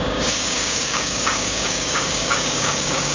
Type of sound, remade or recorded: remade